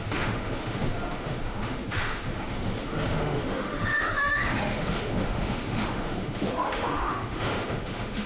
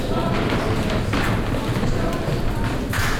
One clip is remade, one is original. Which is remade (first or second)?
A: first